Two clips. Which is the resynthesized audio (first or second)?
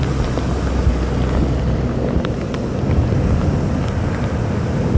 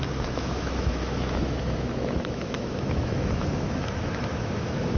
second